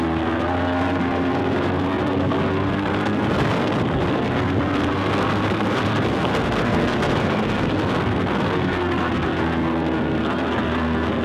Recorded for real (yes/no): no